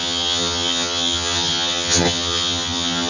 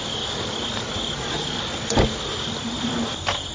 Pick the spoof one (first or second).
first